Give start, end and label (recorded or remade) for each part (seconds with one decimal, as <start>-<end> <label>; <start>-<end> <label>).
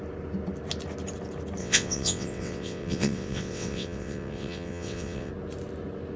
0.0-1.6 recorded; 1.6-5.3 remade; 5.3-6.2 recorded